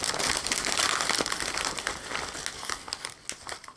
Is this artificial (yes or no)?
no